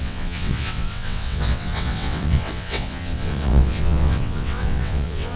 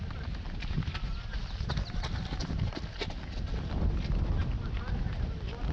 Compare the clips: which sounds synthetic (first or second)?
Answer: first